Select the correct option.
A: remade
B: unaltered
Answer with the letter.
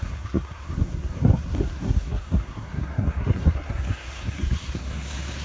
A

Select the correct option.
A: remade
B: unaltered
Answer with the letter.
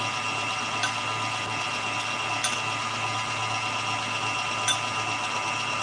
B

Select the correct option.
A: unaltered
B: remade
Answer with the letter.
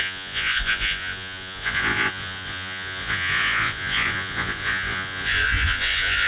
B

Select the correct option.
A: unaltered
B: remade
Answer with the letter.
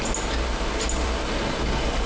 A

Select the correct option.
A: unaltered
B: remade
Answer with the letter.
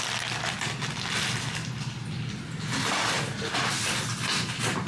A